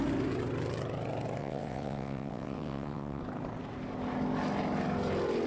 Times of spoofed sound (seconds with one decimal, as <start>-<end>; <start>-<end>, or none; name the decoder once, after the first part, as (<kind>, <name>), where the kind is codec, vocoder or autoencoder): 1.4-3.2 (vocoder, WaveNeXt)